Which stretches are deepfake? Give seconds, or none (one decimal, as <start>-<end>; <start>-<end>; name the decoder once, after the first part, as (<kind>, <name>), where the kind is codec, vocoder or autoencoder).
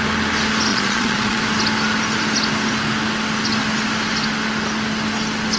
0.7-1.4 (vocoder, Vocos)